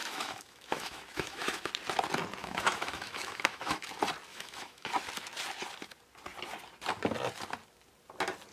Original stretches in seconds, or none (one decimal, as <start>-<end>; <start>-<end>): 1.7-2.4; 3.9-4.3; 4.9-8.5